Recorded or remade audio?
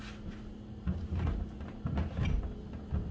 recorded